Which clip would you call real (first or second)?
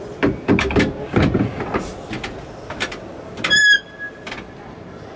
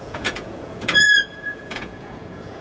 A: first